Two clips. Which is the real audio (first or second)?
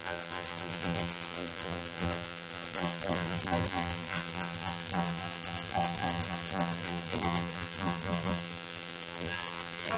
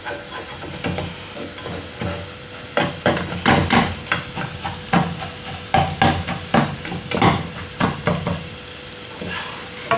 second